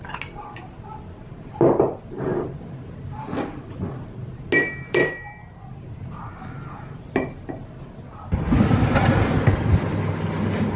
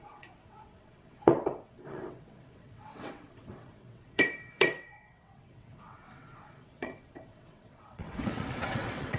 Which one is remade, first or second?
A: second